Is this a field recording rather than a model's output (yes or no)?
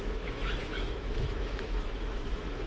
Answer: no